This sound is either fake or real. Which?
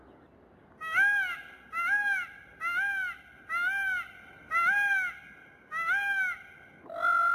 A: real